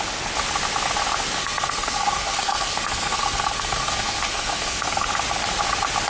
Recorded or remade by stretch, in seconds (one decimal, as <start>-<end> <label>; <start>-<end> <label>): 0.0-1.4 recorded; 1.4-5.1 remade; 5.1-6.1 recorded